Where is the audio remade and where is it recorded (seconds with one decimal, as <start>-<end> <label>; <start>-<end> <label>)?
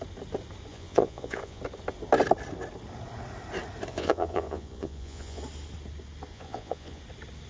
0.0-0.7 recorded; 0.7-1.6 remade; 1.6-3.9 recorded; 3.9-5.4 remade; 5.4-6.3 recorded; 6.3-7.0 remade; 7.0-7.5 recorded